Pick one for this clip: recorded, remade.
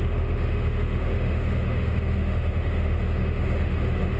remade